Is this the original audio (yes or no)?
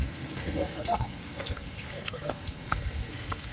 no